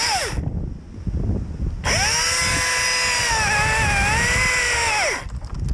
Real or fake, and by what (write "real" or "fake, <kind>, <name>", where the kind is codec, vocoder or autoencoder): real